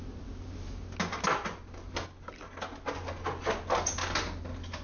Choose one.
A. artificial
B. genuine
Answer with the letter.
B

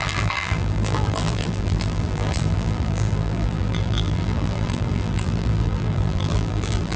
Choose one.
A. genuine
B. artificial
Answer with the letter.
B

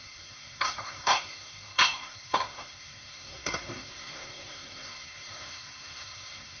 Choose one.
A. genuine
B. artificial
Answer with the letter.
B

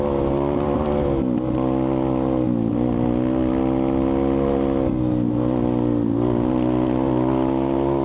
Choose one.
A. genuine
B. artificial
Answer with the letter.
A